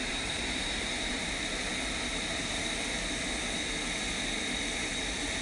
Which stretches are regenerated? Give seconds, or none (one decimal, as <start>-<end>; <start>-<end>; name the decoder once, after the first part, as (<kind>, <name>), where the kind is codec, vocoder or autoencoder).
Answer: 0.0-1.7 (vocoder, BigVGAN v2); 4.9-5.4